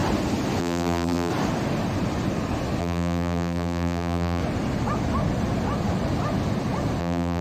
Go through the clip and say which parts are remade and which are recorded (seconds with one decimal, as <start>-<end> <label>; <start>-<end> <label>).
0.0-0.6 recorded; 0.6-1.3 remade; 1.3-2.8 recorded; 2.8-4.4 remade; 4.4-7.0 recorded; 7.0-7.4 remade